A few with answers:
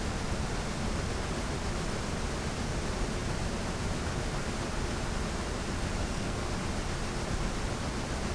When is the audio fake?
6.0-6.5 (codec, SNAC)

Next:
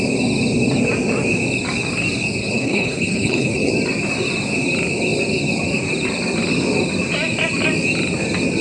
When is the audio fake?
2.4-3.7 (codec, HILCodec)